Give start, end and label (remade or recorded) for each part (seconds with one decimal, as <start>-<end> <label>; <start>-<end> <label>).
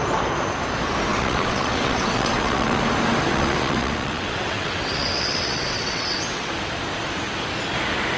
0.0-1.1 recorded; 1.1-2.8 remade; 2.8-3.3 recorded; 3.3-6.5 remade; 6.5-8.2 recorded